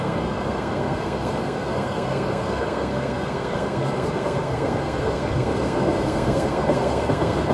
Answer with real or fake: fake